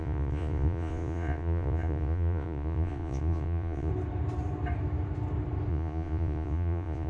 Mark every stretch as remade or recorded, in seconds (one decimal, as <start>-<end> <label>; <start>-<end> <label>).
0.0-3.9 remade; 3.9-5.7 recorded; 5.7-7.1 remade